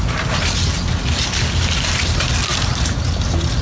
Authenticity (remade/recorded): recorded